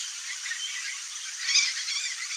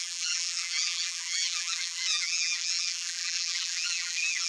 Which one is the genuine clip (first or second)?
first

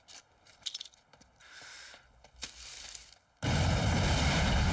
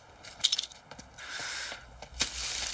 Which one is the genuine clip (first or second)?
second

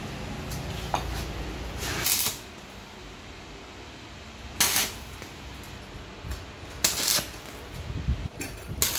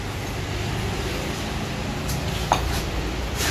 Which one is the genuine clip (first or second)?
first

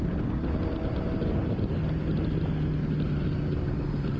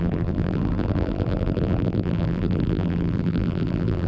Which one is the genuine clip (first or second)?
first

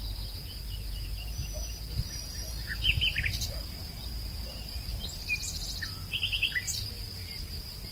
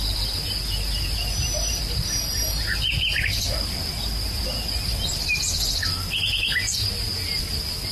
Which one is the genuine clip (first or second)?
second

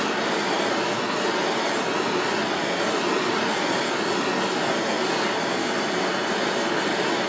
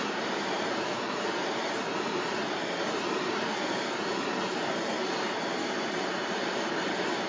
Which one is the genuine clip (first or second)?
first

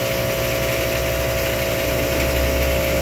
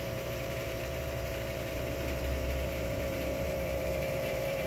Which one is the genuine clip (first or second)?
first